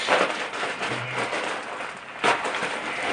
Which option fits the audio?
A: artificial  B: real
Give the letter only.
B